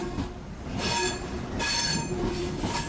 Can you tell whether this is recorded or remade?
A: recorded